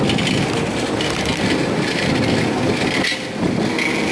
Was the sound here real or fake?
real